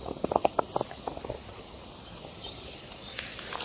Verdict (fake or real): real